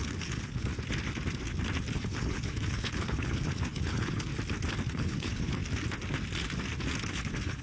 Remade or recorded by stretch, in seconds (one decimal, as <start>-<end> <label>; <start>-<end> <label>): 0.0-0.7 remade; 0.7-1.9 recorded; 1.9-4.3 remade; 4.3-4.9 recorded; 4.9-5.6 remade; 5.6-7.1 recorded; 7.1-7.6 remade